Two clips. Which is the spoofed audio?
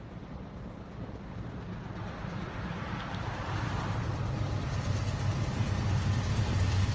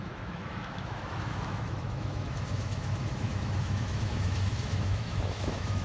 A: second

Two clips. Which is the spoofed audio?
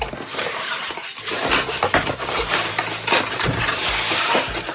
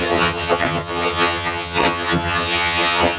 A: second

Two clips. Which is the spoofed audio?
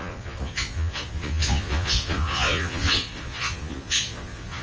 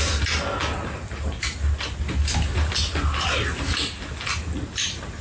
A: first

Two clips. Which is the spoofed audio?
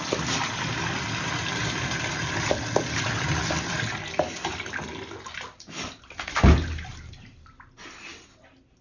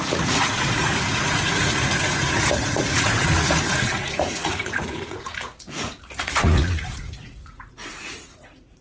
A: second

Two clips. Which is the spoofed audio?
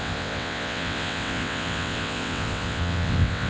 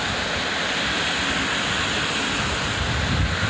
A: first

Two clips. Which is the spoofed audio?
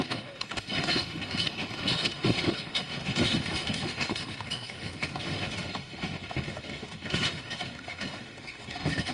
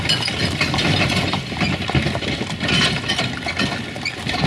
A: first